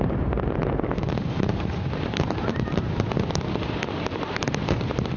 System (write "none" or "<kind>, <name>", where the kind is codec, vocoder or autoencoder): vocoder, BigVGAN v2